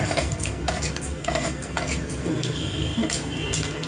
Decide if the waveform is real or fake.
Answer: fake